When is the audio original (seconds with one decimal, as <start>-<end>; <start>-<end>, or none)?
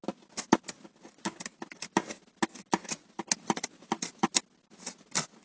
0.0-5.4